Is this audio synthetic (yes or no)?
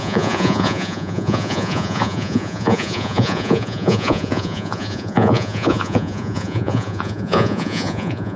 yes